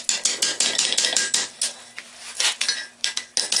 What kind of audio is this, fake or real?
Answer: real